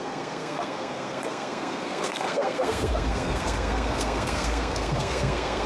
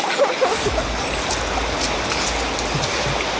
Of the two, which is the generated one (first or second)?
first